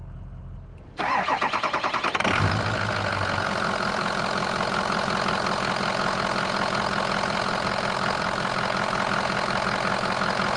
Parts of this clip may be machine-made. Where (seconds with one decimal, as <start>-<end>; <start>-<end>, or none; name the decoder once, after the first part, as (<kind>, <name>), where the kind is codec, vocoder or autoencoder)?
none